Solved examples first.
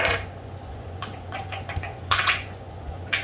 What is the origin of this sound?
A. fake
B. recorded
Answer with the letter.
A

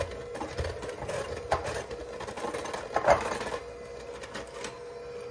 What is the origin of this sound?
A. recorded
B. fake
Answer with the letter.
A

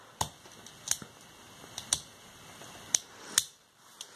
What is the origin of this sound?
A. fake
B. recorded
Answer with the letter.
B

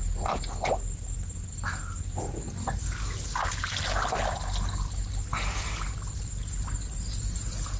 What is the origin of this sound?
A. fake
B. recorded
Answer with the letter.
B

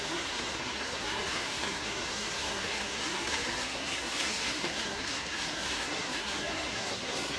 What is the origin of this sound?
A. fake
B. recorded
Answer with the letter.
A